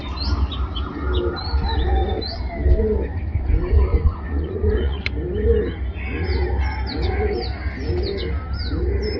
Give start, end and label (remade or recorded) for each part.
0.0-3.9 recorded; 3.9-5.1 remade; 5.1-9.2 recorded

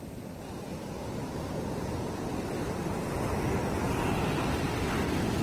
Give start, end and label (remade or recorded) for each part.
0.0-5.4 recorded